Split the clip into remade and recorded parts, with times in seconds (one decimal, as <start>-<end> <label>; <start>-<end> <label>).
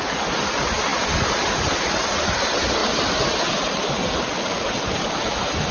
0.0-2.8 remade; 2.8-3.5 recorded; 3.5-4.0 remade; 4.0-5.2 recorded; 5.2-5.7 remade